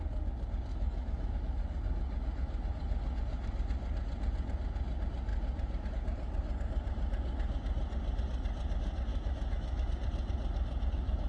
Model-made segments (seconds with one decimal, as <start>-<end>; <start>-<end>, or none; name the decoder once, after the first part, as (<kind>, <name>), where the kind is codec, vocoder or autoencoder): 0.7-1.4 (autoencoder, DAC-VAE); 9.1-9.9